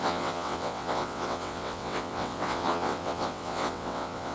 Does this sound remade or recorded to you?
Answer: remade